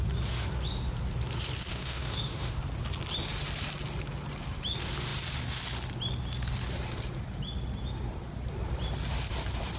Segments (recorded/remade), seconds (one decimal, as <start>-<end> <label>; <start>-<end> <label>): 0.0-1.7 recorded; 1.7-2.6 remade; 2.6-9.8 recorded